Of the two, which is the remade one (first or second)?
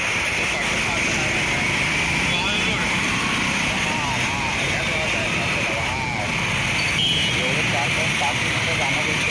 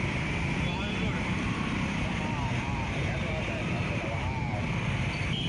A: second